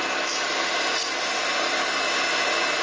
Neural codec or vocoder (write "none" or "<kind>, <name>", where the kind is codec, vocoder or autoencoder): none